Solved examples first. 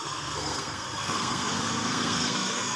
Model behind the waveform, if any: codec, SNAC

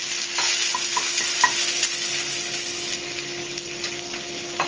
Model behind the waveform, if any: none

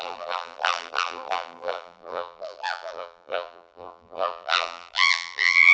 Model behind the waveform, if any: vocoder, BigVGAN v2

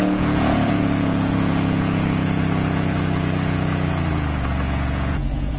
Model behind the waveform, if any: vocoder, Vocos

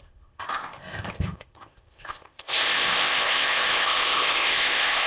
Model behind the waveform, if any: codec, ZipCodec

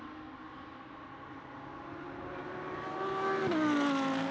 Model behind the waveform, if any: none